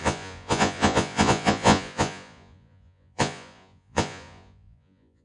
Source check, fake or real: fake